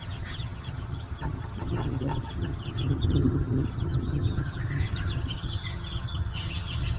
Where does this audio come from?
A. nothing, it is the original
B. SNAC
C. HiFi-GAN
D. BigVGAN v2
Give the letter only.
C